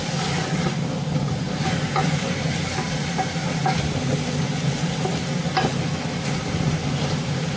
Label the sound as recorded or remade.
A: recorded